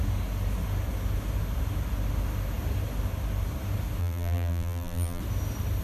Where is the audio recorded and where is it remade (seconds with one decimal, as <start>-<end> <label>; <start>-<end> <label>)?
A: 0.0-4.0 recorded; 4.0-5.2 remade; 5.2-5.8 recorded